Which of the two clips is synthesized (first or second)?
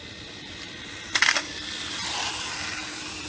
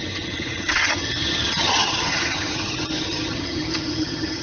second